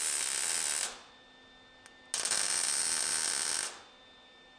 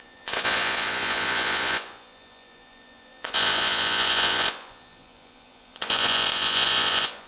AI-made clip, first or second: second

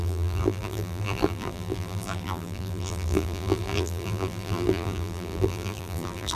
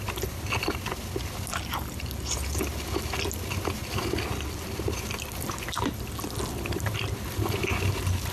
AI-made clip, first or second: first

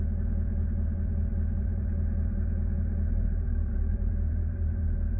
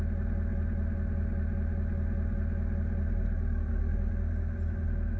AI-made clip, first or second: first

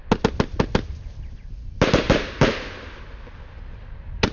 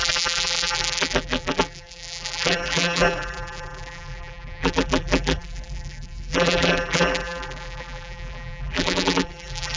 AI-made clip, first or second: second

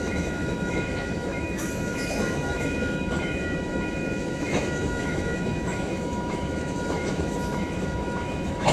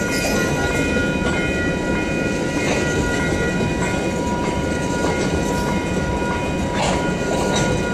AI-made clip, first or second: first